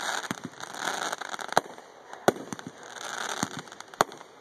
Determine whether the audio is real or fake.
real